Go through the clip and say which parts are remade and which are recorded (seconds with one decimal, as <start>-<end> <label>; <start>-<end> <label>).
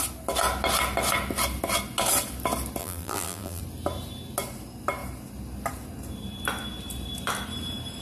0.0-2.8 recorded; 2.8-3.6 remade; 3.6-8.0 recorded